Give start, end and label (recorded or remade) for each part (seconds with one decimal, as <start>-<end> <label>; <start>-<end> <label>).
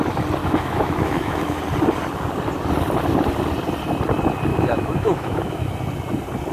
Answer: 0.0-0.4 recorded; 0.4-1.6 remade; 1.6-4.5 recorded; 4.5-5.7 remade; 5.7-6.5 recorded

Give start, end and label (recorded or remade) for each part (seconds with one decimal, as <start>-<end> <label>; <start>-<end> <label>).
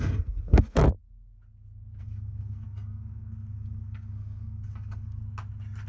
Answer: 0.0-0.8 remade; 0.8-2.0 recorded; 2.0-5.2 remade; 5.2-5.9 recorded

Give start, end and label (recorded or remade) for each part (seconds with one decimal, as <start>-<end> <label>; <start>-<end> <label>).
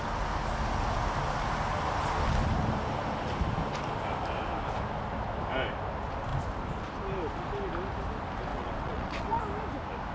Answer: 0.0-8.5 recorded; 8.5-9.4 remade; 9.4-10.1 recorded